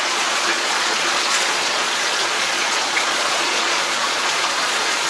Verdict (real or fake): fake